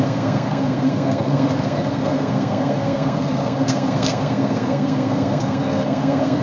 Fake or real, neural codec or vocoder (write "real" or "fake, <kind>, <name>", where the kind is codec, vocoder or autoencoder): fake, codec, SNAC